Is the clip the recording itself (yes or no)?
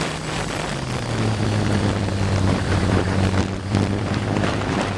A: no